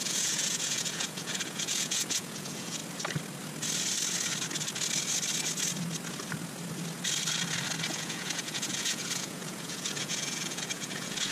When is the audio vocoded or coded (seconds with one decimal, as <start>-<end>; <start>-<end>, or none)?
0.0-2.8; 7.9-11.3